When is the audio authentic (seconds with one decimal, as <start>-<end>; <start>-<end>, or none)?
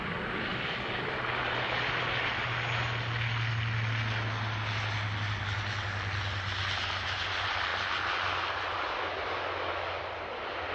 0.0-10.7